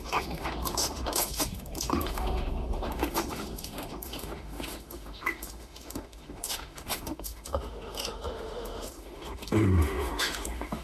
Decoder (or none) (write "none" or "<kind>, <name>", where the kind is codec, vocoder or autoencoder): autoencoder, DAC-VAE